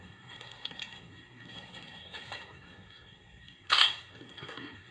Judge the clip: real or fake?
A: fake